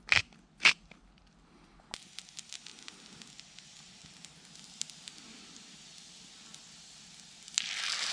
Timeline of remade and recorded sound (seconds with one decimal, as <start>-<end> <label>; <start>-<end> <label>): 0.0-8.1 recorded